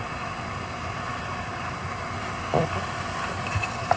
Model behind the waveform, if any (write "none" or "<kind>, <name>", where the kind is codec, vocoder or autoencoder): none